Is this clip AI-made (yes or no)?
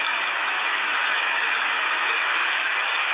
yes